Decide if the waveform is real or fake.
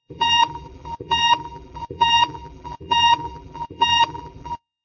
fake